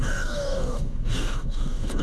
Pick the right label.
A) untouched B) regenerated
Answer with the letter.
B